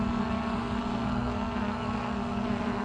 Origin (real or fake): fake